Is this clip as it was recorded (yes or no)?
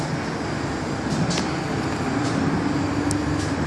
yes